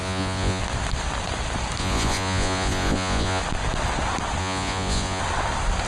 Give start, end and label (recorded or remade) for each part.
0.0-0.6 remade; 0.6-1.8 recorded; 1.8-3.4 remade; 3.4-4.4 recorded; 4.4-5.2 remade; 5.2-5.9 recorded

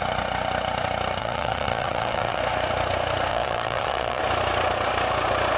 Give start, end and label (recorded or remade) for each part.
0.0-1.2 recorded; 1.2-2.4 remade; 2.4-3.3 recorded; 3.3-4.2 remade; 4.2-5.6 recorded

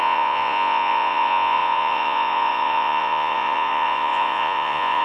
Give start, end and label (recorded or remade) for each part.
0.0-5.0 remade

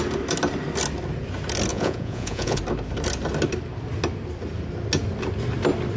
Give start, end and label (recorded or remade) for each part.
0.0-1.7 recorded; 1.7-2.6 remade; 2.6-6.0 recorded